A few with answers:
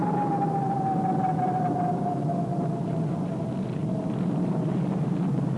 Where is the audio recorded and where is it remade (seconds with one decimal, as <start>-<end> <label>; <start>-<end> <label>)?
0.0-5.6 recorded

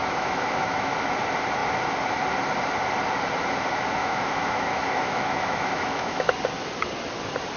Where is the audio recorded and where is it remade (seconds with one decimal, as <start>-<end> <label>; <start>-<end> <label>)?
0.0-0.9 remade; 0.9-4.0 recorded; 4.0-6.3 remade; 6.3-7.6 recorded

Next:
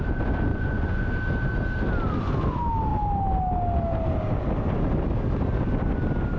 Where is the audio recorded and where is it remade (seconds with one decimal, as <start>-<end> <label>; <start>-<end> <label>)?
0.0-0.5 recorded; 0.5-1.1 remade; 1.1-6.4 recorded

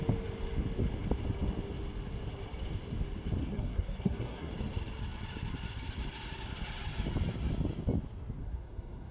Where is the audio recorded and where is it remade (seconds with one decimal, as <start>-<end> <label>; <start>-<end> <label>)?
0.0-3.4 recorded; 3.4-4.5 remade; 4.5-8.4 recorded; 8.4-9.1 remade